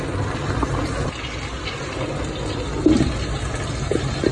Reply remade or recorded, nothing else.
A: recorded